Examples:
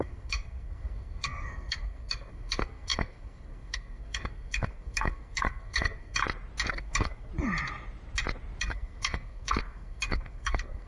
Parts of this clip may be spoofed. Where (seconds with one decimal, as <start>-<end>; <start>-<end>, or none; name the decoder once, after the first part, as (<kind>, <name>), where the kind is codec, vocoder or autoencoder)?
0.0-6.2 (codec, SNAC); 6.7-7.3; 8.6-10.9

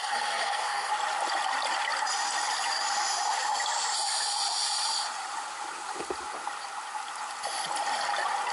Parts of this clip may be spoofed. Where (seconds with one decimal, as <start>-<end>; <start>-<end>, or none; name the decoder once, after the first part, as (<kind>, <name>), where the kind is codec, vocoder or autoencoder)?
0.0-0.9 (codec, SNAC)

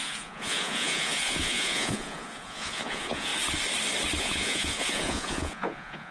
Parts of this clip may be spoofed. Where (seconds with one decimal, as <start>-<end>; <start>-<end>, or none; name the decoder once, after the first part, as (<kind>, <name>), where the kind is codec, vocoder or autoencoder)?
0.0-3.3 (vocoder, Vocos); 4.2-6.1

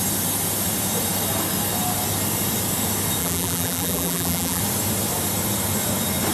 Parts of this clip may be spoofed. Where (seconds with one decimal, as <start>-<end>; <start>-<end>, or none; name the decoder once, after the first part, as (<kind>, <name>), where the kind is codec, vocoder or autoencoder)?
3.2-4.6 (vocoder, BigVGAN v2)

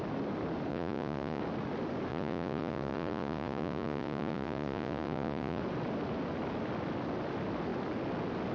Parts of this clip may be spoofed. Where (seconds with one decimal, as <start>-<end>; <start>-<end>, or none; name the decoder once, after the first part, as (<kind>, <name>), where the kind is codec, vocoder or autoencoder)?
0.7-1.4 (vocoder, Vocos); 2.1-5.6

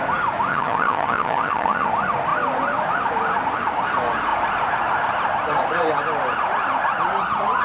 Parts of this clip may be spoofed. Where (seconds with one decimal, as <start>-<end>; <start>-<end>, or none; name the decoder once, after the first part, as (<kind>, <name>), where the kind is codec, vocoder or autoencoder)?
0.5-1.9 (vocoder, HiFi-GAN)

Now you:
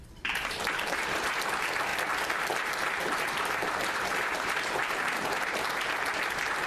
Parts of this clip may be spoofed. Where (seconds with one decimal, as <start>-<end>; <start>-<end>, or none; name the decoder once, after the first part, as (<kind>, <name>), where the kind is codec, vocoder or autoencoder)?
0.0-1.9 (vocoder, BigVGAN v2); 2.4-6.7

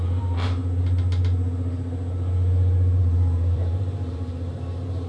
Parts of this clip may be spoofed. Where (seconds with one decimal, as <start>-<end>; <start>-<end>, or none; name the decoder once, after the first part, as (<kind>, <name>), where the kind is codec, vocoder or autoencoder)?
0.0-0.6 (vocoder, BigVGAN v2); 3.0-5.1